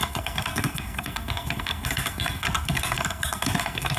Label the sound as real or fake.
fake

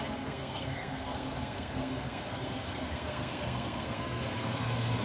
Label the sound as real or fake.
fake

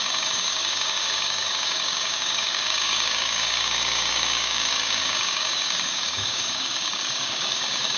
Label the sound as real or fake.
fake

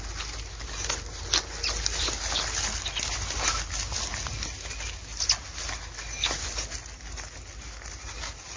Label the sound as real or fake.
real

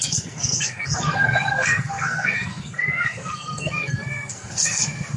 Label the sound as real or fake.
fake